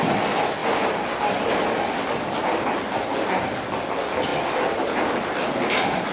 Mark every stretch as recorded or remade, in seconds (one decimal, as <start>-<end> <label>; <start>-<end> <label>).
0.0-4.3 recorded; 4.3-5.0 remade; 5.0-6.1 recorded